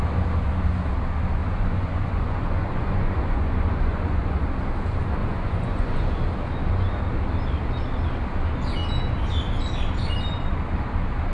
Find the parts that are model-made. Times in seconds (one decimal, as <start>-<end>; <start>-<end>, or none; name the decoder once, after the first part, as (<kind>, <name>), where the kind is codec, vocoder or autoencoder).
1.4-4.4 (vocoder, Vocos); 5.2-6.2